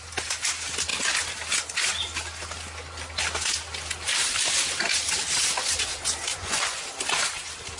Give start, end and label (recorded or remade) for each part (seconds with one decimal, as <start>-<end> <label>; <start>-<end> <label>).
0.0-6.3 recorded; 6.3-6.8 remade; 6.8-7.8 recorded